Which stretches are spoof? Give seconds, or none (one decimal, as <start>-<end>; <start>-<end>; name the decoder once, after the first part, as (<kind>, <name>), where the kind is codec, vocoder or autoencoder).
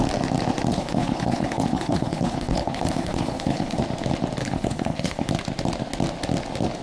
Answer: 0.7-3.8 (codec, HILCodec); 4.4-5.3